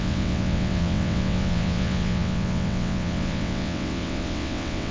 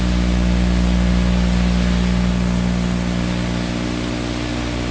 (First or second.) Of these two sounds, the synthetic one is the first